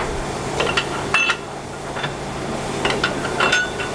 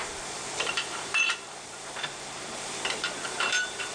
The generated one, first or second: second